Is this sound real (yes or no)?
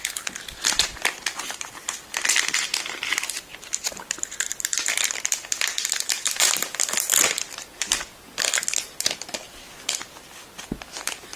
no